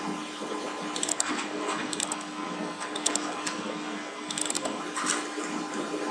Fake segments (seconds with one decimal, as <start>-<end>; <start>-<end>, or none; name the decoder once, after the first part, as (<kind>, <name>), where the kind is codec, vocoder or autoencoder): 1.1-4.8 (codec, SNAC)